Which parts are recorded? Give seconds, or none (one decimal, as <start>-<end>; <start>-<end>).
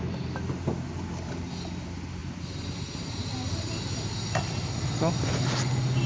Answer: 0.0-6.1